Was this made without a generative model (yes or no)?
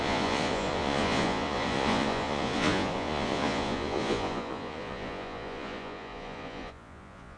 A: no